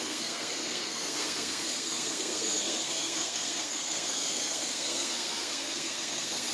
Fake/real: fake